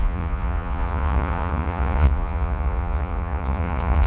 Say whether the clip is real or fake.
fake